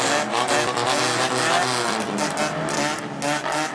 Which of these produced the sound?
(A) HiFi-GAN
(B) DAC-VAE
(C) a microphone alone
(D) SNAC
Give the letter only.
C